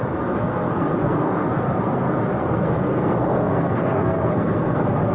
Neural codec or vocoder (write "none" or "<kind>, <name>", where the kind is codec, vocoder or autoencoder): codec, SNAC